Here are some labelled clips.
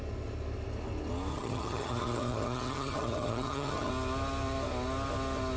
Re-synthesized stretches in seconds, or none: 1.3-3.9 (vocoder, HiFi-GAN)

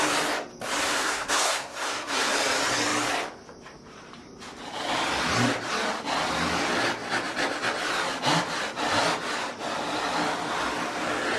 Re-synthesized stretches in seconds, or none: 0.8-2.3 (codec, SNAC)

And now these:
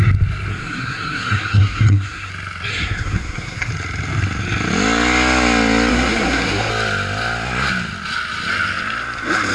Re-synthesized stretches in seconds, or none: 0.5-2.3 (codec, SNAC); 2.7-3.7; 5.9-6.7